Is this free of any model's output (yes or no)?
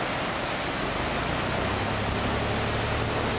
yes